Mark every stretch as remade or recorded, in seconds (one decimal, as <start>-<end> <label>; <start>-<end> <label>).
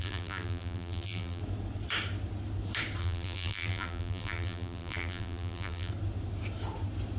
0.0-1.4 remade; 1.4-3.0 recorded; 3.0-5.9 remade; 5.9-7.2 recorded